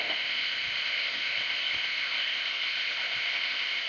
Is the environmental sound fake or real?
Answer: fake